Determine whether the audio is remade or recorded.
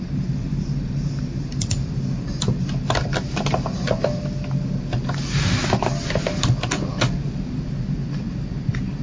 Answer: recorded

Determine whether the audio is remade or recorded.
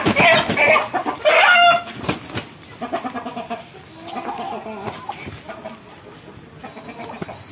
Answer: recorded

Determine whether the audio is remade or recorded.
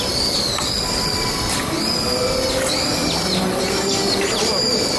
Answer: recorded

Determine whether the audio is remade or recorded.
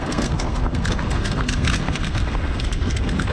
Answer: remade